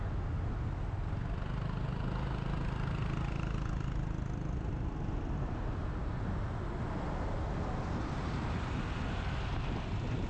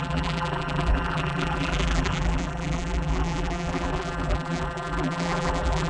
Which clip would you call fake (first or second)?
second